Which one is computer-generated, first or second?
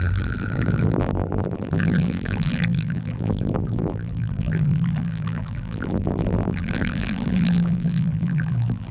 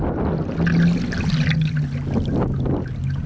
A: first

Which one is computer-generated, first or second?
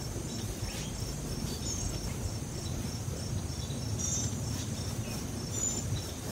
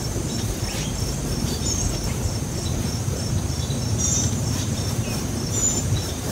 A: second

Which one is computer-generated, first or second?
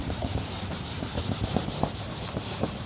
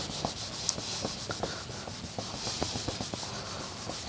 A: first